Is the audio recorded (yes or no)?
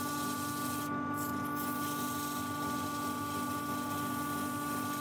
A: yes